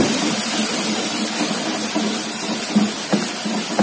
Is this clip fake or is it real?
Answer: real